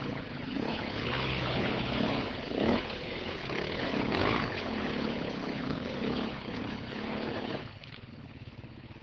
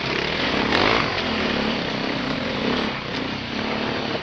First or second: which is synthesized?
first